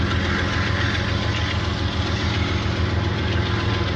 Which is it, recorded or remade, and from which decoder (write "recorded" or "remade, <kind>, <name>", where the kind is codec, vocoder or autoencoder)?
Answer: recorded